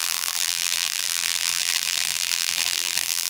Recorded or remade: remade